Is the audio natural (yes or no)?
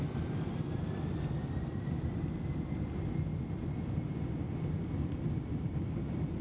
yes